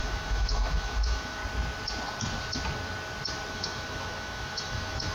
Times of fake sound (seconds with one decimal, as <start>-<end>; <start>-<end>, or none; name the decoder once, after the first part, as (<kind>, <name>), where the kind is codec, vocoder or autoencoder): 0.0-1.4 (autoencoder, DAC-VAE); 3.5-5.1